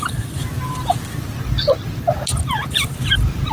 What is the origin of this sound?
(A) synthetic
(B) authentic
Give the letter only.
B